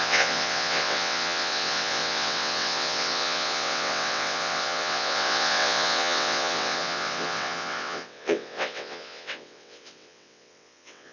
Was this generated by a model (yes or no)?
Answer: yes